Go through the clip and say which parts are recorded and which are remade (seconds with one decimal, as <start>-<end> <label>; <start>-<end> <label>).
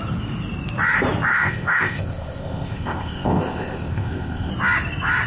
0.0-1.3 recorded; 1.3-4.5 remade; 4.5-5.3 recorded